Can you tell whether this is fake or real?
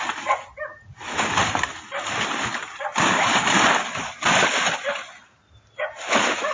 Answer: real